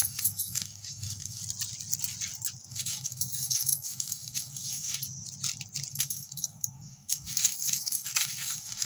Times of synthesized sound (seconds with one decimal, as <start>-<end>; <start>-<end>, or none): 0.0-1.4; 2.7-5.0; 5.9-8.8